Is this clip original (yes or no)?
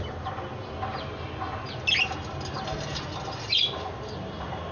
yes